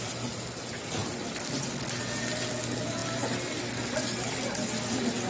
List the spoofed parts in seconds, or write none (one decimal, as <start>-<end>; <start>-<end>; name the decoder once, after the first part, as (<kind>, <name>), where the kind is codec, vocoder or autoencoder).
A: none